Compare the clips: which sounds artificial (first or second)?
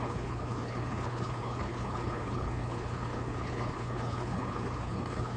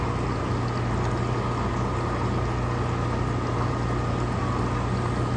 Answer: first